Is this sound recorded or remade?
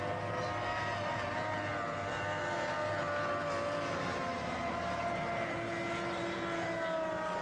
recorded